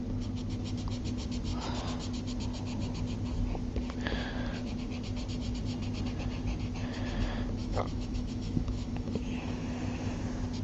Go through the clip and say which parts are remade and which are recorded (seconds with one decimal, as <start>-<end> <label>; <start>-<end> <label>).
0.0-7.6 recorded; 7.6-10.2 remade; 10.2-10.6 recorded